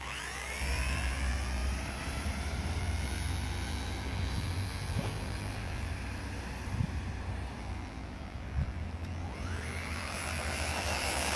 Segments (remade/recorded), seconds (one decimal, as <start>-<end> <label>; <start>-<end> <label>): 0.0-1.6 remade; 1.6-2.8 recorded; 2.8-5.9 remade; 5.9-7.6 recorded; 7.6-11.4 remade